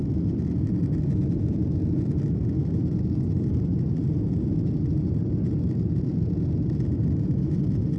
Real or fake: real